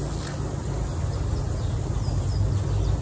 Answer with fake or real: real